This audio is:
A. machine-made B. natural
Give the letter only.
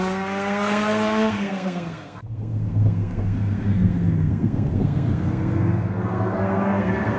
A